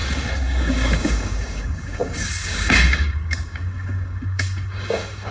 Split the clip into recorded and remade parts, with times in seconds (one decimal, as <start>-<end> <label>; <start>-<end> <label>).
0.0-5.3 remade